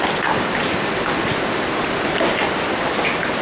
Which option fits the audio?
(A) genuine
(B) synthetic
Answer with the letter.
A